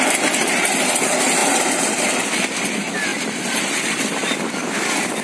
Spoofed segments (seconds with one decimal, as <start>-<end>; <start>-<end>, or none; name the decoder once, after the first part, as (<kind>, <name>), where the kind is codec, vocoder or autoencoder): 1.4-2.0 (vocoder, BigVGAN v2); 3.1-5.2